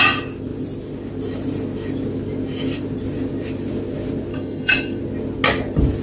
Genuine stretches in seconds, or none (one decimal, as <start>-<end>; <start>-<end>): 0.0-4.3; 5.0-6.0